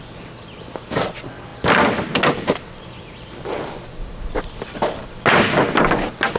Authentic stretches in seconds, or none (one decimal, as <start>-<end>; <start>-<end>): 0.0-6.4